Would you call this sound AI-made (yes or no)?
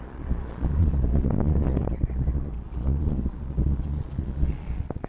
yes